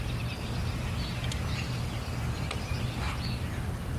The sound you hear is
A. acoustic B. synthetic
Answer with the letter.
A